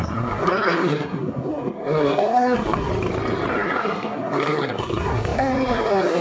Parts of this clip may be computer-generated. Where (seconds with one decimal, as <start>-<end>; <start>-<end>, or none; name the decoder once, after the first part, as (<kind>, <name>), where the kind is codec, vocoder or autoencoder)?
0.0-2.9 (codec, SNAC); 3.5-6.2